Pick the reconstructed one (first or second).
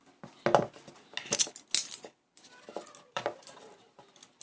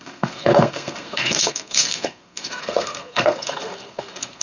second